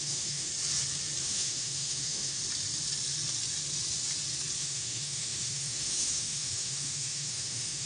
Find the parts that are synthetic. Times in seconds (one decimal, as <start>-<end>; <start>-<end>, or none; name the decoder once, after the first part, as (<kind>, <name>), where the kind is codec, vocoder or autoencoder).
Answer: 0.0-0.5 (autoencoder, DAC-VAE); 1.2-2.4; 4.6-7.9

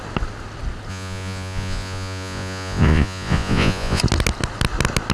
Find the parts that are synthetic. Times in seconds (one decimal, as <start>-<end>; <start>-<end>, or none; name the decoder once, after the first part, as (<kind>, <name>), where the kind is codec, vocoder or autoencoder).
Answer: 0.9-4.0 (vocoder, Vocos)

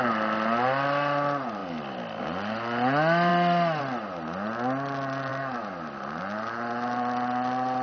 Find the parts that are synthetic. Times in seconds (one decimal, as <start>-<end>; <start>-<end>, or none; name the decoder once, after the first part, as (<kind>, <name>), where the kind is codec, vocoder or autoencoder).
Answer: none